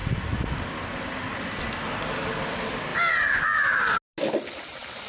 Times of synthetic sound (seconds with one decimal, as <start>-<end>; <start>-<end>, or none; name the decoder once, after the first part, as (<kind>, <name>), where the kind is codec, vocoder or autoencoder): 0.0-2.3 (vocoder, BigVGAN v2)